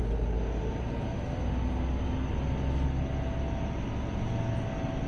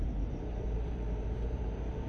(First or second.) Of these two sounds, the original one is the first